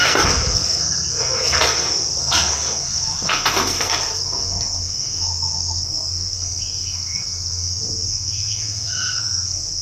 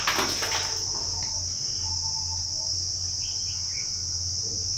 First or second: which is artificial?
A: first